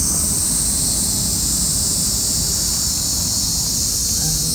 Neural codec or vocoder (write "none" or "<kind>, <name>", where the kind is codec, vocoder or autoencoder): none